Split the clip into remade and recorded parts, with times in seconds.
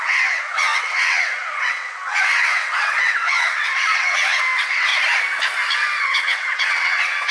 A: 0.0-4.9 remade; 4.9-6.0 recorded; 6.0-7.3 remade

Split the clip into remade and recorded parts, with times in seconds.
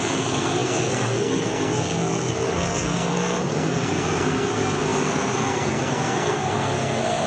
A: 0.0-7.3 remade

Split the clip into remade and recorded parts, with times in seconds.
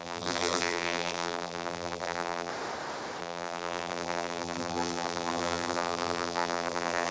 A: 0.0-2.5 remade; 2.5-3.2 recorded; 3.2-7.1 remade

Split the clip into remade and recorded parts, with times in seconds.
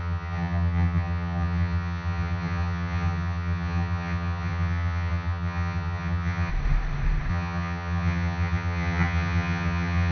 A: 0.0-6.5 remade; 6.5-7.3 recorded; 7.3-10.1 remade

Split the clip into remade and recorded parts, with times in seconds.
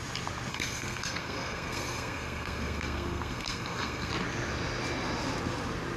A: 0.0-0.5 recorded; 0.5-4.1 remade; 4.1-6.0 recorded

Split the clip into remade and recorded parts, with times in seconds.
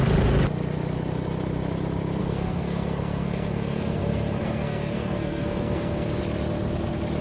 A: 0.0-2.2 recorded; 2.2-6.2 remade; 6.2-7.2 recorded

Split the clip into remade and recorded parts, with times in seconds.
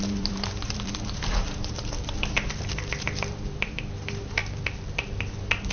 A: 0.0-4.4 remade; 4.4-5.7 recorded